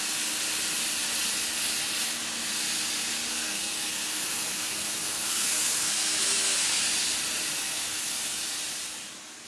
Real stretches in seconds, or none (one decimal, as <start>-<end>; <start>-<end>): 0.0-3.3; 6.8-7.6; 8.4-9.5